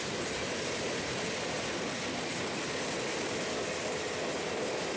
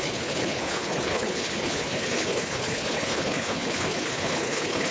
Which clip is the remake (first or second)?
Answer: second